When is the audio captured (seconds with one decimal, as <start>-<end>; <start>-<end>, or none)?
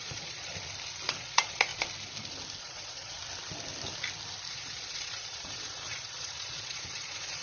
0.5-1.2; 1.7-2.6; 3.2-4.5